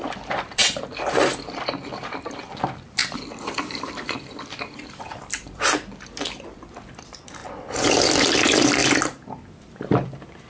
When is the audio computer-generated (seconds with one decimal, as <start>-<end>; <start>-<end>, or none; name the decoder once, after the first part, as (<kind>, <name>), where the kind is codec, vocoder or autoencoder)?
0.0-0.6 (vocoder, BigVGAN v2); 1.9-3.0; 3.9-7.4; 8.3-8.8; 9.5-10.5